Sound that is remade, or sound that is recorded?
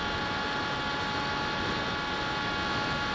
recorded